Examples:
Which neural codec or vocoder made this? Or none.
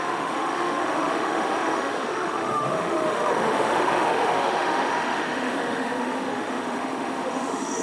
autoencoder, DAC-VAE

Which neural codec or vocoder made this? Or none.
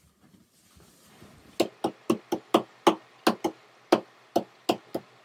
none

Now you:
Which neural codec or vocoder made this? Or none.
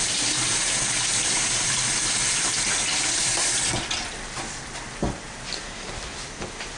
vocoder, BigVGAN v2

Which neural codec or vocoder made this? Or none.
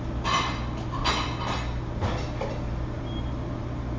none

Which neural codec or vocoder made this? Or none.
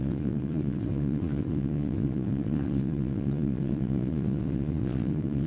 vocoder, WaveNeXt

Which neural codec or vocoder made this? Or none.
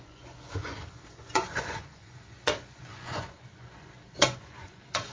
vocoder, Vocos